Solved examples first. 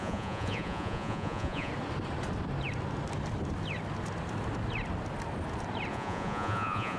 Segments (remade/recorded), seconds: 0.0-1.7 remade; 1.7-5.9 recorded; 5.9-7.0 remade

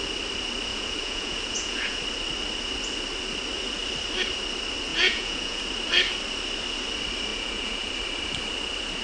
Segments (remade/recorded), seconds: 0.0-0.7 recorded; 0.7-2.0 remade; 2.0-4.9 recorded; 4.9-5.6 remade; 5.6-7.3 recorded; 7.3-7.9 remade; 7.9-9.0 recorded

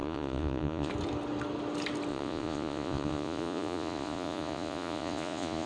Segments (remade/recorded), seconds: 0.0-0.9 remade; 0.9-2.1 recorded; 2.1-5.7 remade

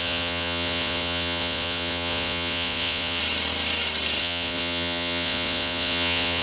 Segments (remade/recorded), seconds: 0.0-3.2 remade; 3.2-4.2 recorded; 4.2-6.4 remade

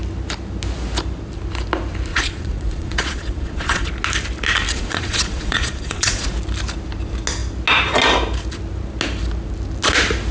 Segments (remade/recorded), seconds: 0.0-2.1 recorded; 2.1-3.9 remade; 3.9-4.7 recorded; 4.7-6.3 remade; 6.3-10.3 recorded

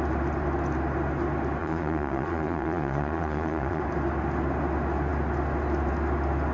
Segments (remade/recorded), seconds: 0.0-1.6 recorded; 1.6-3.8 remade; 3.8-6.5 recorded

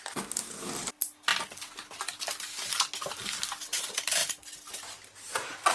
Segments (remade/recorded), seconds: 0.0-5.7 recorded

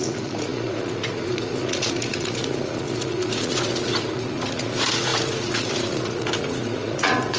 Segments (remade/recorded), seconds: 0.0-7.4 remade